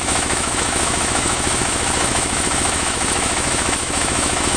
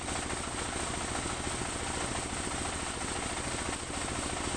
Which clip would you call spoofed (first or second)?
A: first